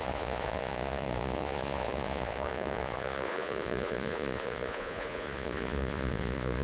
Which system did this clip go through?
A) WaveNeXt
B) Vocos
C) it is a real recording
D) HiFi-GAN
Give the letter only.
B